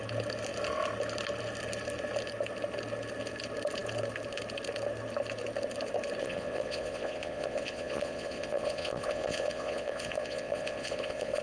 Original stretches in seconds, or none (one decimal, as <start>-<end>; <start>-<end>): 0.0-6.2